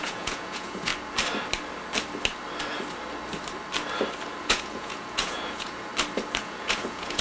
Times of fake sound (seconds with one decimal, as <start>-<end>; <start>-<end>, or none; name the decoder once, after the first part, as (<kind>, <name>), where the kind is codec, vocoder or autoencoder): 0.0-0.9 (vocoder, Vocos); 4.4-5.9; 6.4-7.2